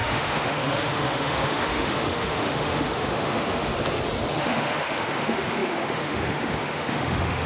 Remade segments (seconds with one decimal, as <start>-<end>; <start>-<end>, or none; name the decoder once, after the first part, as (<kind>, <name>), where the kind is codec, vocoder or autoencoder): 0.0-3.7 (autoencoder, DAC-VAE); 4.3-7.5